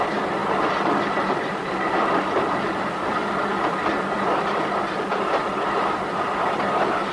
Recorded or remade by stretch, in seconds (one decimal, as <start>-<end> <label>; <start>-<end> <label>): 0.0-7.1 recorded